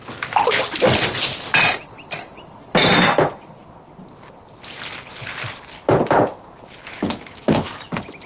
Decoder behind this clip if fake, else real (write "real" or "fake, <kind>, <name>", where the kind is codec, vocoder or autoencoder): real